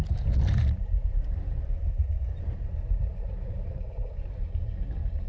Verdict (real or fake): fake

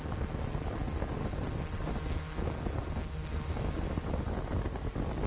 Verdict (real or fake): real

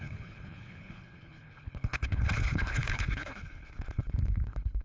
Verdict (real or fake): fake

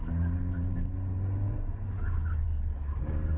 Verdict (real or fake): real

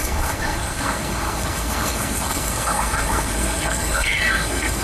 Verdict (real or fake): fake